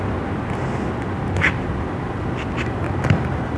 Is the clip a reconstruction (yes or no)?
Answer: no